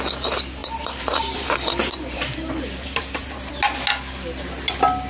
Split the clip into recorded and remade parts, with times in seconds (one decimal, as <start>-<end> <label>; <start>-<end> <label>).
0.0-0.6 recorded; 0.6-3.5 remade; 3.5-5.1 recorded